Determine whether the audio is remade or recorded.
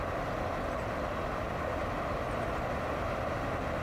recorded